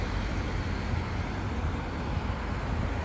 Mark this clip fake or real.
real